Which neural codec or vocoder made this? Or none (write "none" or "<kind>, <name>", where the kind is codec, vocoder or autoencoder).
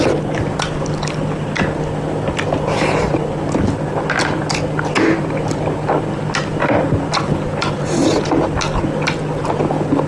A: none